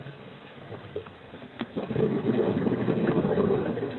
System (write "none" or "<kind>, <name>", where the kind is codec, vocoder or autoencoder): codec, SNAC